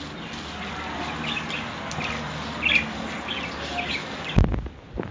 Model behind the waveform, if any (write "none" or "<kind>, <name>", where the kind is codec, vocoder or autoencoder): none